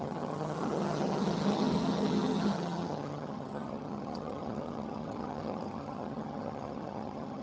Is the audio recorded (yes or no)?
no